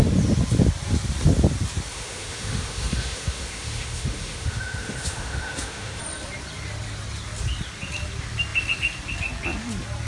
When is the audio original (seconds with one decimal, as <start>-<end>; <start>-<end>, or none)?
0.0-1.9; 6.0-10.1